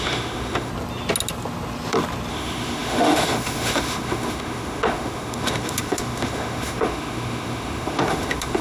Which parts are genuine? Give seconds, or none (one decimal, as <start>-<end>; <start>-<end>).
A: 0.7-2.3